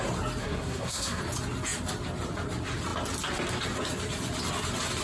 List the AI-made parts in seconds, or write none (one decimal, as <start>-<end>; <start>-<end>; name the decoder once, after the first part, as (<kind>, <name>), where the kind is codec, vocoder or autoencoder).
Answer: 0.4-1.2 (codec, SNAC)